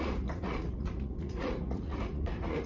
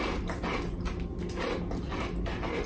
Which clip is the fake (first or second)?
first